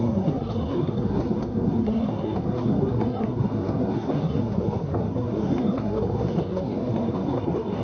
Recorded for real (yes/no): no